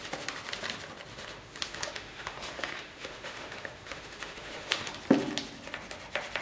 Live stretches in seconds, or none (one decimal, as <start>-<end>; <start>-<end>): 0.0-1.1; 4.9-6.4